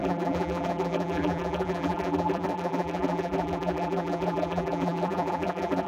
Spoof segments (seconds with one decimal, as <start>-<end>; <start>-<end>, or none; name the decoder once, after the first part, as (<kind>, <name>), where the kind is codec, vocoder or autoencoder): 0.0-5.9 (vocoder, BigVGAN v2)